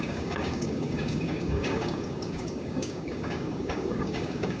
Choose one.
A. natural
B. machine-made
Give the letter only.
B